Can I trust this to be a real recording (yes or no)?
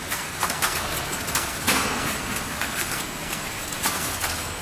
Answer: no